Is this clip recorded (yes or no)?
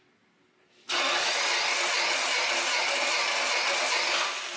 yes